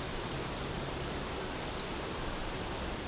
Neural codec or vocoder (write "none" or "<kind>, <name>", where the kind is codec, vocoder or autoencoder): none